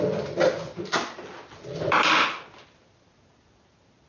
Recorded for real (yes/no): yes